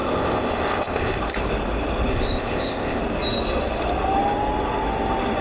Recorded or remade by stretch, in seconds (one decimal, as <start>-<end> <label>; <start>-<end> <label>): 0.0-1.2 remade; 1.2-2.1 recorded; 2.1-3.0 remade; 3.0-5.4 recorded